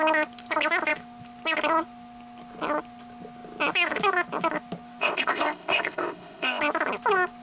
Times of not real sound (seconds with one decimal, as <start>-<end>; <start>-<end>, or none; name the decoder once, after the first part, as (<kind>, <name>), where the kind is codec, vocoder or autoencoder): 5.0-6.6 (codec, ZipCodec)